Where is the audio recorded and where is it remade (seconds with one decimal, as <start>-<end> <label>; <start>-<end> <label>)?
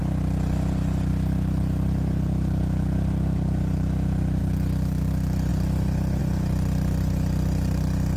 0.0-8.2 recorded